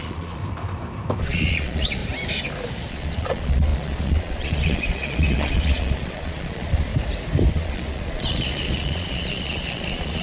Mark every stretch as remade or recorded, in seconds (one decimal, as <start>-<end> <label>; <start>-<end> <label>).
0.0-0.4 remade; 0.4-1.2 recorded; 1.2-2.0 remade; 2.0-2.9 recorded; 2.9-6.9 remade; 6.9-7.5 recorded; 7.5-10.2 remade